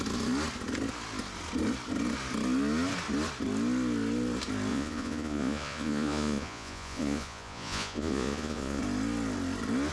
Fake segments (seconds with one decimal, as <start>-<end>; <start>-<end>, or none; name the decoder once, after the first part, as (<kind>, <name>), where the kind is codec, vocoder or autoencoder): 4.7-8.8 (vocoder, Vocos)